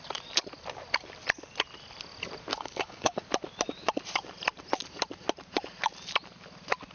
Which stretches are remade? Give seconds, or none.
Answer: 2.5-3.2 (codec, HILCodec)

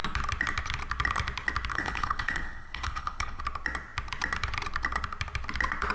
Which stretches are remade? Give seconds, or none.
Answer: 1.7-3.4 (codec, HILCodec)

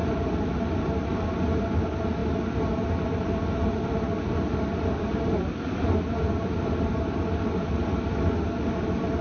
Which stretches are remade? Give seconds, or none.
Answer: none

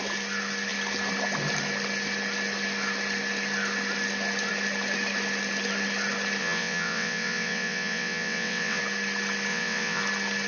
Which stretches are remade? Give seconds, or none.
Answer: 6.4-8.8 (vocoder, WaveNeXt); 9.5-10.0

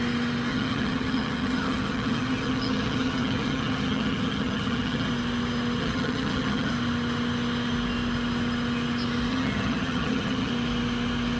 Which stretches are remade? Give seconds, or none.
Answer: 0.5-5.1 (vocoder, HiFi-GAN); 5.8-6.7; 9.3-10.5